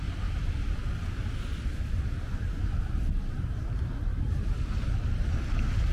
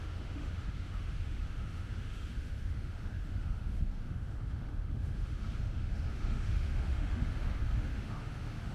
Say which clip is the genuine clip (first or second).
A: first